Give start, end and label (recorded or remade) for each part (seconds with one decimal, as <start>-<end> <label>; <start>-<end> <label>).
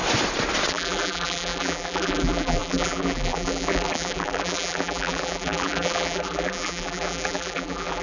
0.0-0.7 recorded; 0.7-8.0 remade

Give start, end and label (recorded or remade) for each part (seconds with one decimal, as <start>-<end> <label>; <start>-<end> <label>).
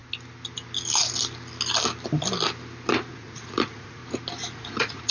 0.0-3.1 recorded; 3.1-4.0 remade; 4.0-4.5 recorded; 4.5-5.1 remade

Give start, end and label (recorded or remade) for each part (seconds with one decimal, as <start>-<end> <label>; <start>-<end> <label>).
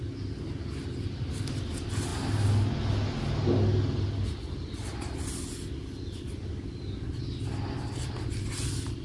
0.0-9.0 recorded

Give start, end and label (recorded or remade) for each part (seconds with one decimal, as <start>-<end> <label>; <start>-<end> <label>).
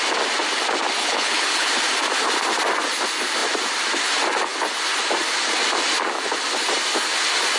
0.0-1.0 recorded; 1.0-1.7 remade; 1.7-7.6 recorded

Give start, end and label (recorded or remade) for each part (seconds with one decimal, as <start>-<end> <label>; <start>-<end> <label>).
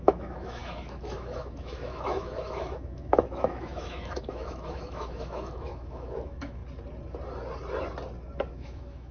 0.0-6.6 remade; 6.6-8.5 recorded; 8.5-9.1 remade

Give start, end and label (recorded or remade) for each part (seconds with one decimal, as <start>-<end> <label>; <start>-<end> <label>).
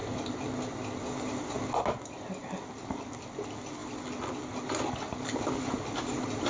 0.0-6.5 recorded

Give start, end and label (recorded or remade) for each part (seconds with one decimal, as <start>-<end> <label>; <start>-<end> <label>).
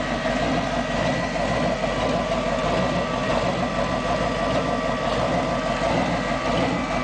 0.0-7.0 recorded